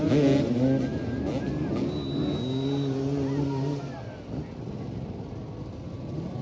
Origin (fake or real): real